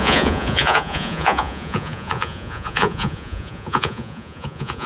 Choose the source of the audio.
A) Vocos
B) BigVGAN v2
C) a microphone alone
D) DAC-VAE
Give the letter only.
A